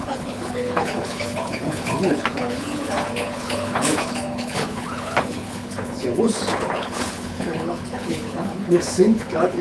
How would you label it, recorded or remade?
remade